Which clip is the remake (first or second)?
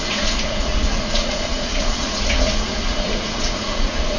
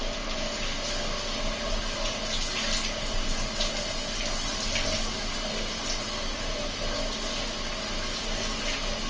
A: first